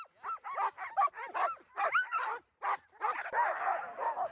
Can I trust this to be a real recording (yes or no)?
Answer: yes